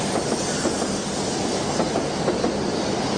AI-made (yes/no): no